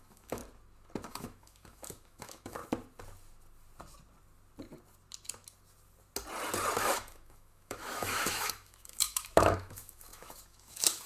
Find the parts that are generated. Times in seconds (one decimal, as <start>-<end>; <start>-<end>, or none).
0.0-0.4; 1.1-2.6; 6.8-11.1